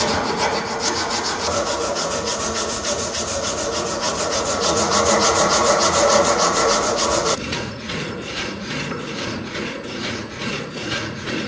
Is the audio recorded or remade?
remade